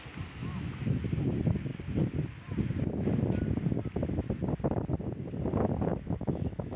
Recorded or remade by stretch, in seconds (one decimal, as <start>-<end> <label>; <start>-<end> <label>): 0.0-0.4 recorded; 0.4-1.0 remade; 1.0-5.9 recorded; 5.9-6.8 remade